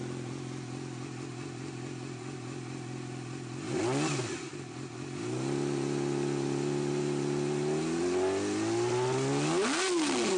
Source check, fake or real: real